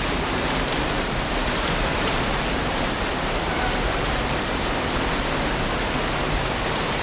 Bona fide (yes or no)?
no